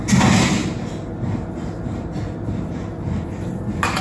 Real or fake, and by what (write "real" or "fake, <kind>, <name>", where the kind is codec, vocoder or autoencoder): real